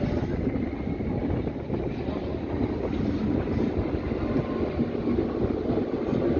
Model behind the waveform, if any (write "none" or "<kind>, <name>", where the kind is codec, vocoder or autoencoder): none